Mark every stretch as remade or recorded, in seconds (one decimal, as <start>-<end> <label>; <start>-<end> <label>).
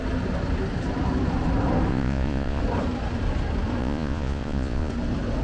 0.0-1.9 recorded; 1.9-2.6 remade; 2.6-3.8 recorded; 3.8-4.9 remade; 4.9-5.4 recorded